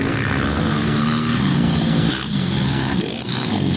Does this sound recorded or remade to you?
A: remade